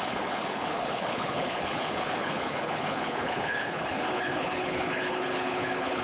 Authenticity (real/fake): fake